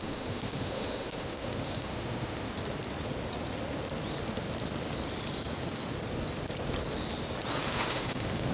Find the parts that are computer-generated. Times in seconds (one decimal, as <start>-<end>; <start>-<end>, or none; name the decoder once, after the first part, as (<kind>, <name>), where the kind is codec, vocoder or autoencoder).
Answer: 0.0-2.5 (autoencoder, DAC-VAE); 7.6-8.5